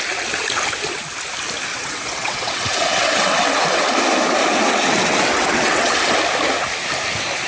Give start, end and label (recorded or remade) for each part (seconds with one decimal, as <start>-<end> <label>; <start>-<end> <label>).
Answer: 0.0-1.7 recorded; 1.7-3.9 remade; 3.9-4.4 recorded; 4.4-6.1 remade; 6.1-7.5 recorded